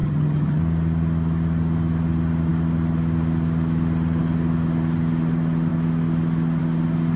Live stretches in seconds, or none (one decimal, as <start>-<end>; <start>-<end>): 0.6-7.2